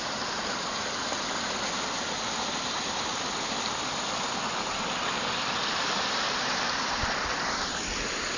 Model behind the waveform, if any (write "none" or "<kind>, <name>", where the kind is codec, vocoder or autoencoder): none